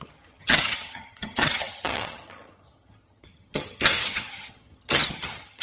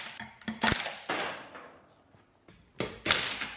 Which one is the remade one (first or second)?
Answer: first